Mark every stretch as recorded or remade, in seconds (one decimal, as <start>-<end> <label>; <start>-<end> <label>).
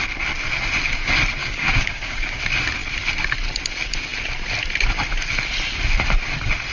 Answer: 0.0-1.4 recorded; 1.4-2.4 remade; 2.4-6.7 recorded